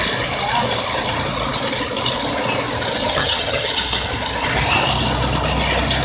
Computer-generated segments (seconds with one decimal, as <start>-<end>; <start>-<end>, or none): 3.0-3.7

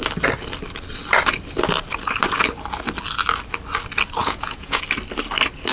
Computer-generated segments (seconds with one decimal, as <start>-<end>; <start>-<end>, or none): 4.2-4.8